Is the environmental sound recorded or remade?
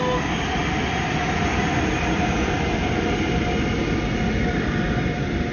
recorded